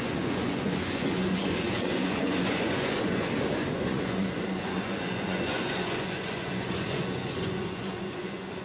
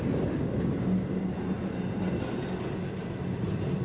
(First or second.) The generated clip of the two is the first